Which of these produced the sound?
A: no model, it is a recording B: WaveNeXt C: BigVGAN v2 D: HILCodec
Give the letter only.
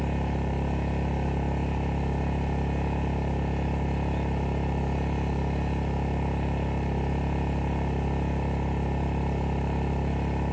A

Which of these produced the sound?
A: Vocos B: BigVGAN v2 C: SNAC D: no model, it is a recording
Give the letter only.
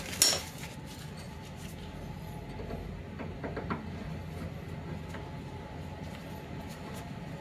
D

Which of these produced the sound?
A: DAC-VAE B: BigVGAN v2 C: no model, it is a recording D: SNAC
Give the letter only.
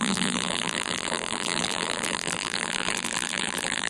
B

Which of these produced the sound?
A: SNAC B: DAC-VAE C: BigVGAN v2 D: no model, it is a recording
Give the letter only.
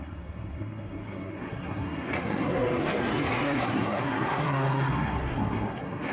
A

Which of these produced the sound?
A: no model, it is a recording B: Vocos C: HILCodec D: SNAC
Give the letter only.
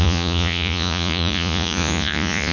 B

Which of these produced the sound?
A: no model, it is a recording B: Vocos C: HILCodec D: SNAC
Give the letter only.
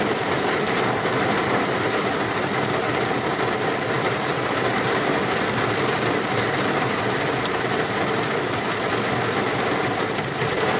A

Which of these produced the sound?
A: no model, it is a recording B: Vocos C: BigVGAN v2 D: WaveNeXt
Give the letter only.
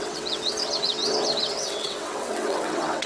D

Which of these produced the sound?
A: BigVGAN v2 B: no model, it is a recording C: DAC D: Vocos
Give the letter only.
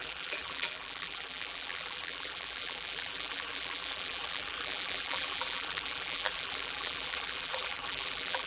A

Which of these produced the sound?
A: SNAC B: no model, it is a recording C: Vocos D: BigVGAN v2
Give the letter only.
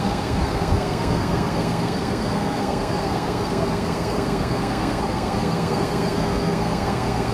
A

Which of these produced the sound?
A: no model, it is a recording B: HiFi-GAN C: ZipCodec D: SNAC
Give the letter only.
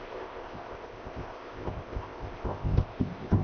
C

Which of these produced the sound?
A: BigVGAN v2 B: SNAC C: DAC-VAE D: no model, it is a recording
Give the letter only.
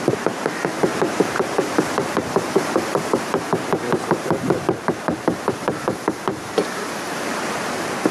A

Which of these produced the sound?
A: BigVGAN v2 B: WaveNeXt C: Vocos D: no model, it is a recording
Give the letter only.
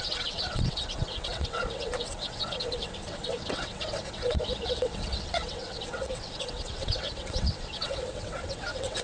B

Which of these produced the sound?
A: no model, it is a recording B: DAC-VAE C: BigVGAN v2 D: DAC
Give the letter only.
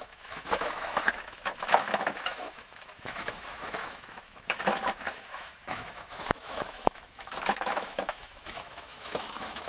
B